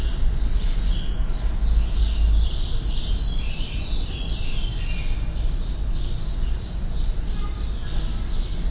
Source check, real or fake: real